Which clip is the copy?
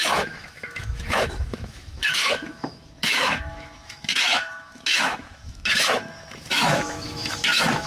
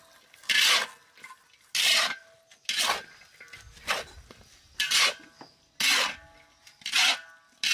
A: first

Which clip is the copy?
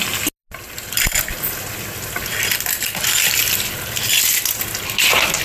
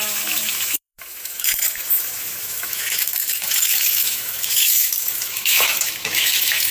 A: second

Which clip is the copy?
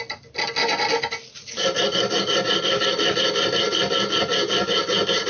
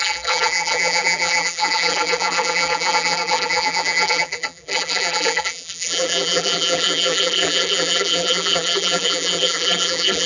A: second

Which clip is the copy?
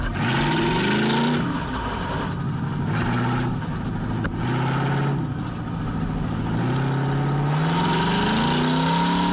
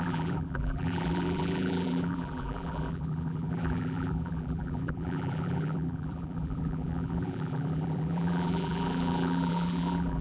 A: second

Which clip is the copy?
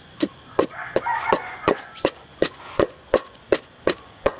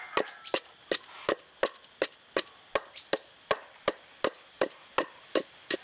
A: first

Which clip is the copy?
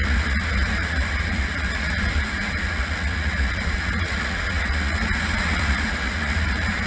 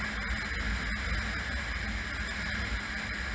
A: first